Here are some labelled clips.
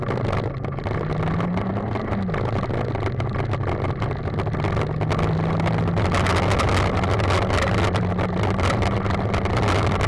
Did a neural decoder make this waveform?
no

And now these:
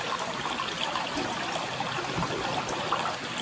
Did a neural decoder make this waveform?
no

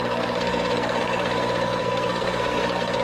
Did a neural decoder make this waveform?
yes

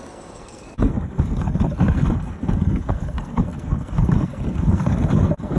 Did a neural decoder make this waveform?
yes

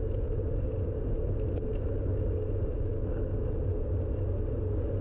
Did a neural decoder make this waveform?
no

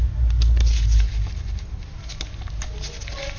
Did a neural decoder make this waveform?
no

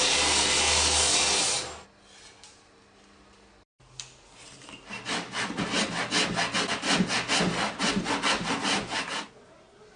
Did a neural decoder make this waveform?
no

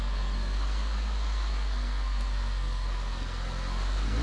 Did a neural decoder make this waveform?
yes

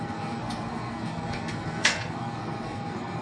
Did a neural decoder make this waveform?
yes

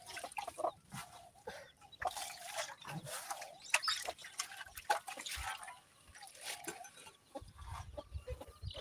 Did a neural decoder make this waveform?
no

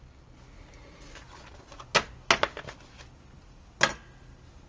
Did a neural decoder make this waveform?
no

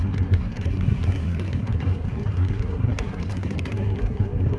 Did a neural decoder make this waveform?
yes